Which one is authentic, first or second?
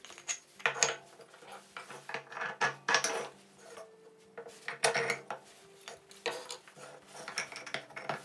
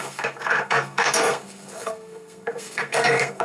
first